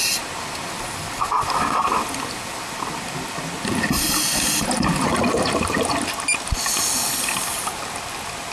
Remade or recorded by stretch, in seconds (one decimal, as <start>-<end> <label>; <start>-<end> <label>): 0.0-5.1 recorded; 5.1-5.9 remade; 5.9-8.5 recorded